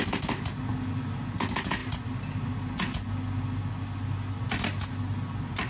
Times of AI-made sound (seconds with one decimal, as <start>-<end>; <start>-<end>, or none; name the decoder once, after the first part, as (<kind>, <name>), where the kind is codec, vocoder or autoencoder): none